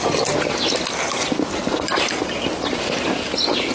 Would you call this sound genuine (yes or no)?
yes